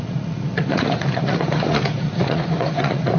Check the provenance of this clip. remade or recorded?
remade